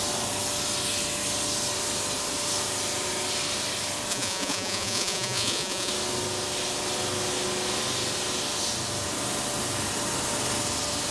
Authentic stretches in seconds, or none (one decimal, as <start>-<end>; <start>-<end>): 0.0-4.1; 5.9-11.1